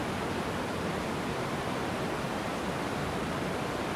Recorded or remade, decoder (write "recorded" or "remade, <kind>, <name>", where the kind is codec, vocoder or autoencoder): recorded